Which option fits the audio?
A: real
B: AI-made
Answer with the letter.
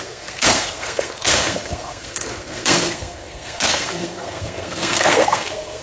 B